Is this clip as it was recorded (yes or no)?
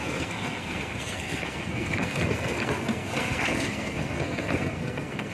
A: no